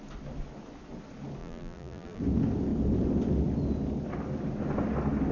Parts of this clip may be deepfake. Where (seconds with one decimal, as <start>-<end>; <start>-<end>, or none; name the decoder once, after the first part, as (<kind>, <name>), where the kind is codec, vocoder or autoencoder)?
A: 1.4-2.2 (vocoder, BigVGAN v2)